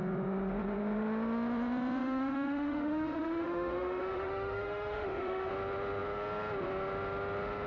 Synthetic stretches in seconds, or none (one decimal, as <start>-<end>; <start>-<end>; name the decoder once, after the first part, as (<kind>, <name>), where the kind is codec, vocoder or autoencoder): 2.0-5.5 (autoencoder, DAC-VAE)